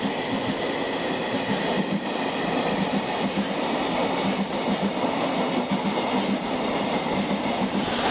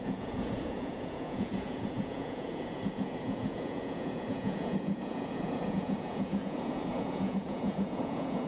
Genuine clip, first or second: first